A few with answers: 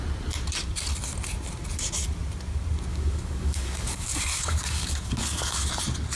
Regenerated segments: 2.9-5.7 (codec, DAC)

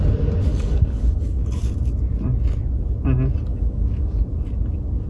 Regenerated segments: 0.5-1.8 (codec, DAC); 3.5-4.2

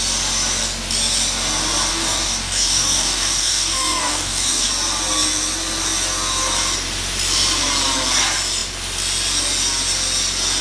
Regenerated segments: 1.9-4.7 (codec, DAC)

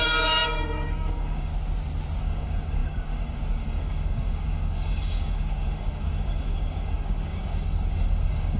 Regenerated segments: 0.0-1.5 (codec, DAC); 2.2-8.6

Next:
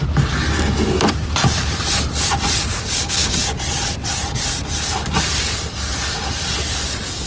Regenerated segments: 2.7-3.5 (codec, DAC)